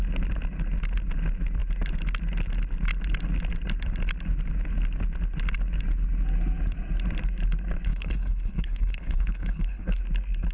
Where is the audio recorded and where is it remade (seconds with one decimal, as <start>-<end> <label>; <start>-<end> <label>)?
0.0-7.9 recorded; 7.9-10.0 remade; 10.0-10.5 recorded